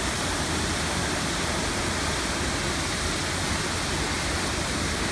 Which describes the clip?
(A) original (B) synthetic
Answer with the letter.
A